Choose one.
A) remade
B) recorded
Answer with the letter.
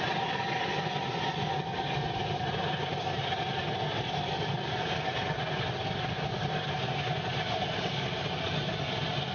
B